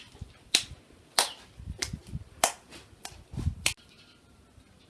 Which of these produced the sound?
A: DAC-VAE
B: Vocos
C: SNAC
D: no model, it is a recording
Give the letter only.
D